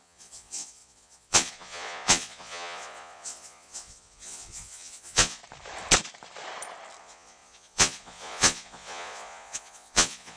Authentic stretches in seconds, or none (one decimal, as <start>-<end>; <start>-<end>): 5.4-7.0